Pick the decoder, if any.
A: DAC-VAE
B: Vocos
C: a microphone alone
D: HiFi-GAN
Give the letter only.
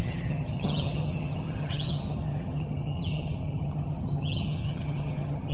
D